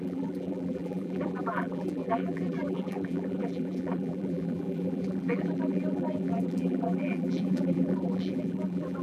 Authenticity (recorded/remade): remade